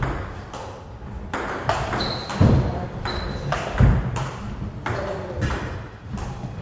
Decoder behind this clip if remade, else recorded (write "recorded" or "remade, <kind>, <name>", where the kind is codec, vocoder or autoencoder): recorded